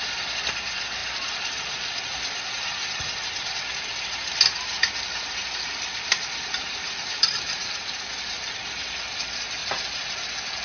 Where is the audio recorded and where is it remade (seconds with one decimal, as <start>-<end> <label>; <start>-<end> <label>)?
0.0-10.6 recorded